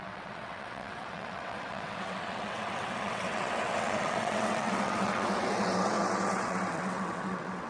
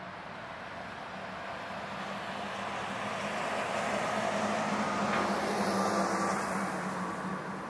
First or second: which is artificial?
first